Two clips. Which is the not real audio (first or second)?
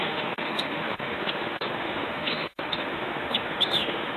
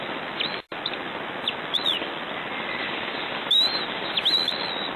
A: first